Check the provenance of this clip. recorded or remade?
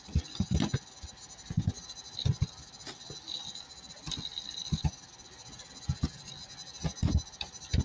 recorded